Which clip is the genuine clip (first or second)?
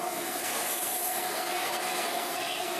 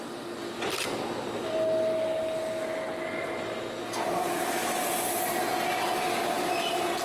second